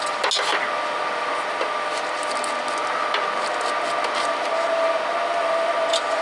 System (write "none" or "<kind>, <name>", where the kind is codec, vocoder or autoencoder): none